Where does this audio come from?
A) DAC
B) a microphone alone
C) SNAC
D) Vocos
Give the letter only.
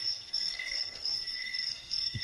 C